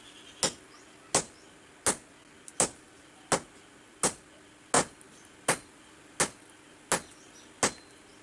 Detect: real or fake real